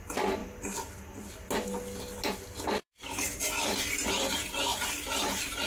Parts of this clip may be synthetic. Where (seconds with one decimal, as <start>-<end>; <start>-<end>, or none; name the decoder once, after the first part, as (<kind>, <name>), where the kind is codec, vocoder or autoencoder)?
2.8-3.4 (codec, DAC)